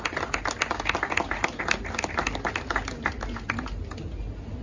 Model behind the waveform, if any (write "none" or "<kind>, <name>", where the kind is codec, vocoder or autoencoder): none